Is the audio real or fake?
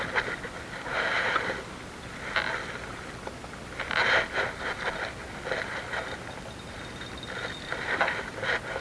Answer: real